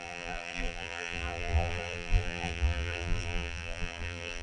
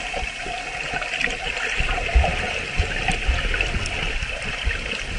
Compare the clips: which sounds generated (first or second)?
first